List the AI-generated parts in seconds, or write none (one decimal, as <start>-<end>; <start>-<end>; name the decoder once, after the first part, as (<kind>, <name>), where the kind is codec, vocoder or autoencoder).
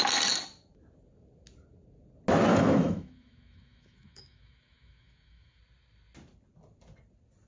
2.5-5.6 (autoencoder, DAC-VAE)